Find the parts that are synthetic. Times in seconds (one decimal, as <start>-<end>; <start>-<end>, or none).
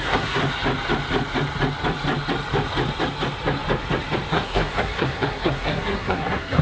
0.0-0.4; 4.3-6.6